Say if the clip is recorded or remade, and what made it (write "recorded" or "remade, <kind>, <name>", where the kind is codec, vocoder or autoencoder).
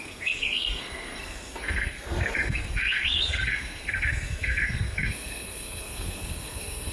remade, codec, SNAC